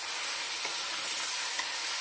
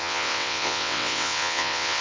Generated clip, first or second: second